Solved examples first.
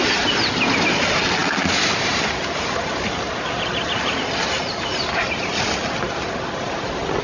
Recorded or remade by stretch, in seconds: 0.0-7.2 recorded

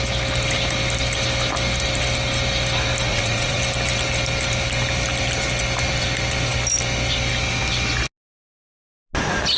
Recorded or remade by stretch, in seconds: 0.0-3.1 recorded; 3.1-3.6 remade; 3.6-9.6 recorded

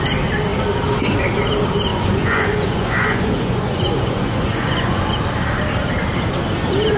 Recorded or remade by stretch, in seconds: 0.0-1.9 recorded; 1.9-5.1 remade; 5.1-7.0 recorded

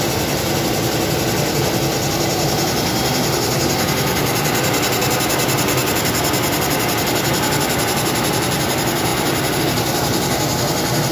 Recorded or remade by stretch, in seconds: 0.0-11.1 recorded

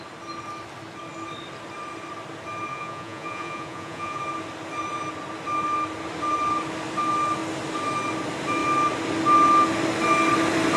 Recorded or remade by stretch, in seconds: 0.0-2.7 recorded; 2.7-4.2 remade; 4.2-10.8 recorded